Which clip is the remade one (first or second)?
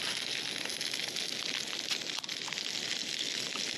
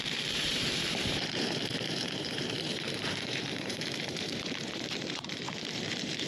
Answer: second